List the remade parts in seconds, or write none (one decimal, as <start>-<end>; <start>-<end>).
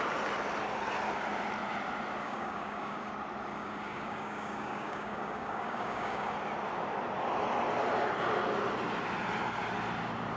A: 2.2-3.1; 3.5-6.3